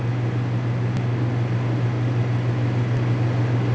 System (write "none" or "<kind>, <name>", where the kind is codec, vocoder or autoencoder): none